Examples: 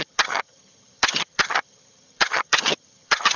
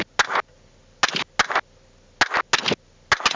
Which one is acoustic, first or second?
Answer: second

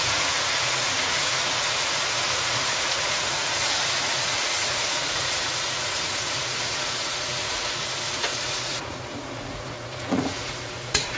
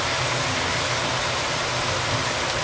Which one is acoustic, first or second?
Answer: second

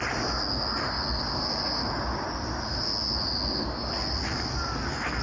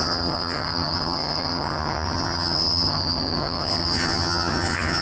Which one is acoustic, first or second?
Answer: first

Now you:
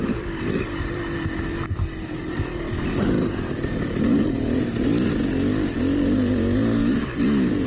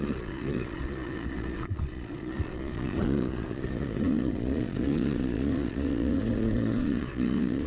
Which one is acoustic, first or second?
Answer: first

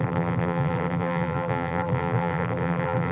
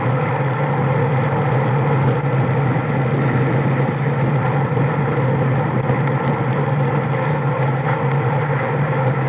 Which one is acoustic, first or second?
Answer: second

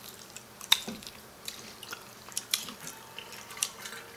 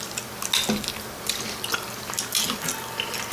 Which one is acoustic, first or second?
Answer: second